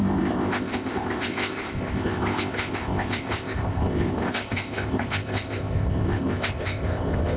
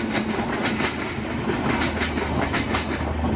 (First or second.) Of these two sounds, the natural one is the second